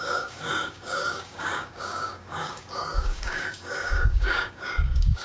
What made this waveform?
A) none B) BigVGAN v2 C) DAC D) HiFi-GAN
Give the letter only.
C